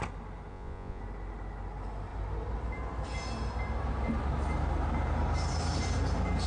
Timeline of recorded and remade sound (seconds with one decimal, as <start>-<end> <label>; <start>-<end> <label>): 0.0-0.5 recorded; 0.5-1.0 remade; 1.0-6.5 recorded